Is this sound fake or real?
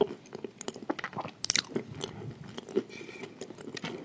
real